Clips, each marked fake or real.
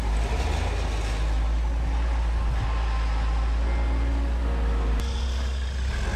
real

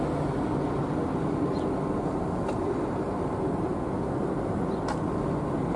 real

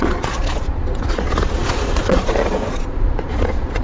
fake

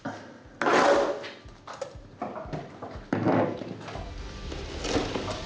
real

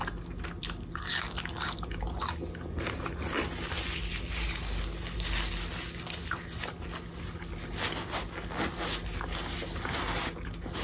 real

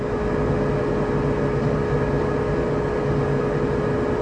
real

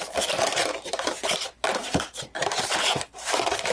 fake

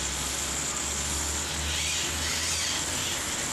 real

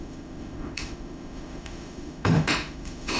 fake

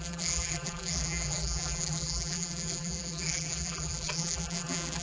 fake